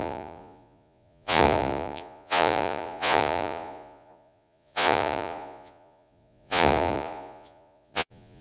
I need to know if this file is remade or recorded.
remade